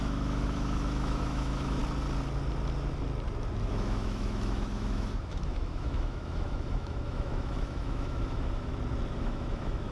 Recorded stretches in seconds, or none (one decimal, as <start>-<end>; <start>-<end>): 1.8-3.7; 8.7-9.2